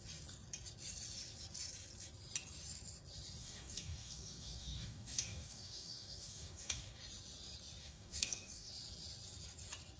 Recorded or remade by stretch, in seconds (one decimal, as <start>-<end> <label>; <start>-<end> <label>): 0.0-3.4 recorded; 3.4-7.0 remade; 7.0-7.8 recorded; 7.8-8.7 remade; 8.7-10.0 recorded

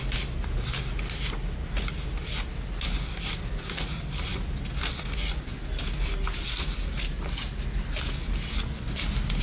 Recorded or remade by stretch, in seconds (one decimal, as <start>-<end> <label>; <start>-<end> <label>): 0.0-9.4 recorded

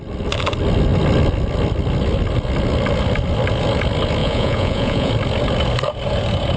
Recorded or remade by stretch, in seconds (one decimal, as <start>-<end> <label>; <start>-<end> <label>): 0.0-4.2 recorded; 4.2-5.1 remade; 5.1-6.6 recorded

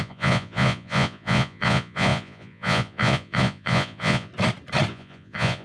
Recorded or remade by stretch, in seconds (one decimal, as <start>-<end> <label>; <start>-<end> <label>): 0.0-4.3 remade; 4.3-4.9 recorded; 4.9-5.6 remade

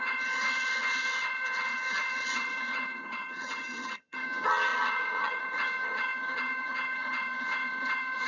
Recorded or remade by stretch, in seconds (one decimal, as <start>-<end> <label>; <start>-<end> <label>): 0.0-8.3 remade

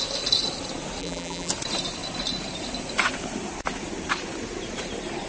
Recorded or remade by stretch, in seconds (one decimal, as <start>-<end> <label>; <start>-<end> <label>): 0.0-1.0 recorded; 1.0-1.5 remade; 1.5-5.3 recorded

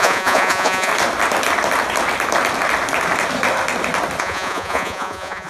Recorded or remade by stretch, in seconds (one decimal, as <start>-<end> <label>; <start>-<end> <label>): 0.0-0.9 remade; 0.9-4.2 recorded; 4.2-5.5 remade

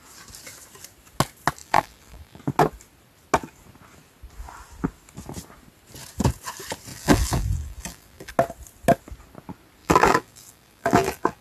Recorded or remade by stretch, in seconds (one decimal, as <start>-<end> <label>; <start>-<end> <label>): 0.0-1.6 recorded; 1.6-2.4 remade; 2.4-6.9 recorded; 6.9-8.3 remade; 8.3-9.8 recorded; 9.8-11.4 remade